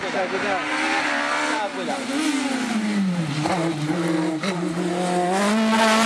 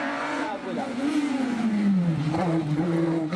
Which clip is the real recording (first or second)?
first